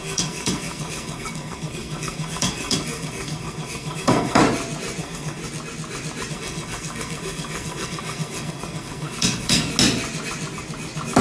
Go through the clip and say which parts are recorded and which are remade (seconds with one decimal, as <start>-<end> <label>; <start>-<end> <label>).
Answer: 0.0-4.4 remade; 4.4-5.0 recorded; 5.0-5.4 remade; 5.4-6.3 recorded; 6.3-9.7 remade; 9.7-11.2 recorded